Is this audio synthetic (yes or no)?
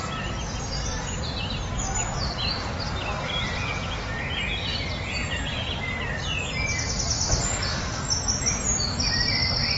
no